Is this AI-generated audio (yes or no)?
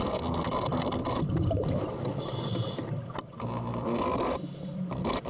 no